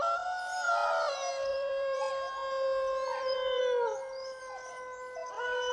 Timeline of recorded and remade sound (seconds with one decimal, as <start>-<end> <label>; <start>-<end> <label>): 0.0-1.5 recorded; 1.5-2.1 remade; 2.1-3.1 recorded; 3.1-3.6 remade; 3.6-5.7 recorded